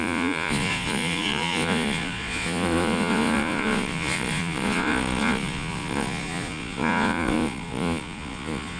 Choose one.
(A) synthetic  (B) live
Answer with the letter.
A